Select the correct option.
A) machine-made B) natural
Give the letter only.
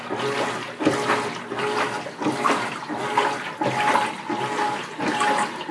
B